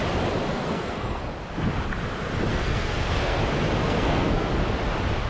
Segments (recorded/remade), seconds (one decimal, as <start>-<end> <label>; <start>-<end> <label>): 0.0-0.5 recorded; 0.5-1.2 remade; 1.2-2.5 recorded; 2.5-3.4 remade; 3.4-3.8 recorded; 3.8-4.5 remade; 4.5-5.3 recorded